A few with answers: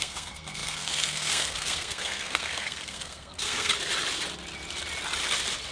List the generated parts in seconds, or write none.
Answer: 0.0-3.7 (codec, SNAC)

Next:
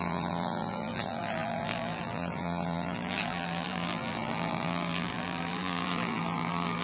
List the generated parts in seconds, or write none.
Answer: 0.0-6.8 (vocoder, BigVGAN v2)

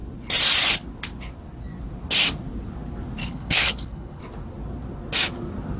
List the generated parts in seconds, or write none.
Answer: 3.2-4.2 (codec, HILCodec)

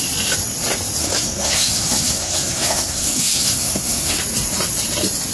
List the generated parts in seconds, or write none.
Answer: 1.0-4.2 (codec, SNAC)